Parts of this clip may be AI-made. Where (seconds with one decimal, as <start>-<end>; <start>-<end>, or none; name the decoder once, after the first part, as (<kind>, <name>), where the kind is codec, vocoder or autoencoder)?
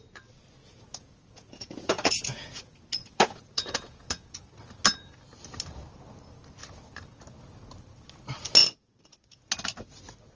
0.6-4.4 (vocoder, Vocos); 8.6-9.5